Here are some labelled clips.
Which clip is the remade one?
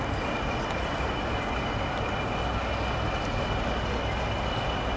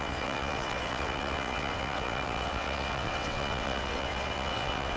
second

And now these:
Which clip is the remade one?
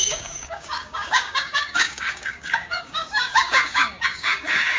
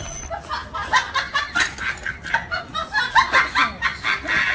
first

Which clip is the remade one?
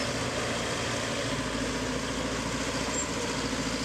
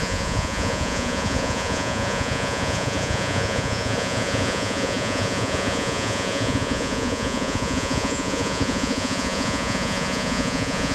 second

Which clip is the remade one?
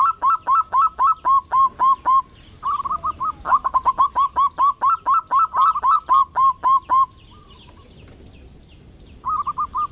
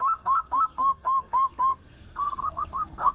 second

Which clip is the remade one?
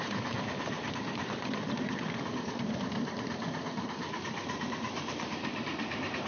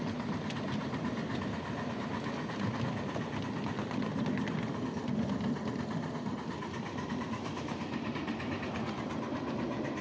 first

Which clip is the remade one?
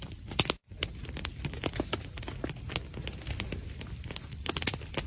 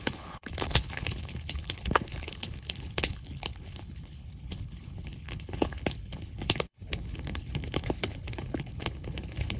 second